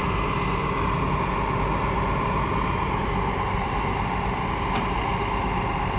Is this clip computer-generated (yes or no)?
no